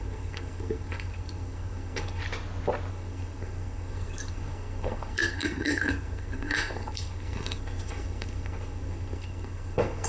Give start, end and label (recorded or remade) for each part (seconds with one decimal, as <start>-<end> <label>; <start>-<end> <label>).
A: 0.0-2.2 remade; 2.2-2.9 recorded; 2.9-10.1 remade